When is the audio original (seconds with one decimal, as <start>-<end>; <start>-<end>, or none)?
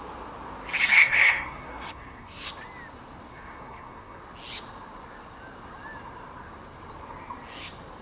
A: 0.0-0.9; 2.5-3.3; 4.2-8.0